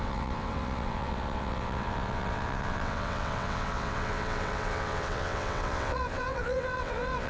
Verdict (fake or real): fake